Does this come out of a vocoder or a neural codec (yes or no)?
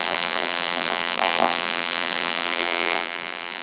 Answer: yes